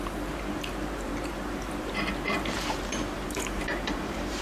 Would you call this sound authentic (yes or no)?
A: no